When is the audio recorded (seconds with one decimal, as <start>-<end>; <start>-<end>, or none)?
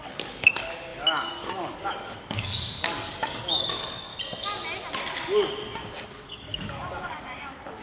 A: 4.1-6.1